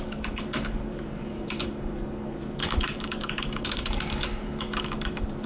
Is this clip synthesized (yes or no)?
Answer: yes